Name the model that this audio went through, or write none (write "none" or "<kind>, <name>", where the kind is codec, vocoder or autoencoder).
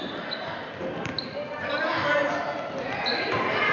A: none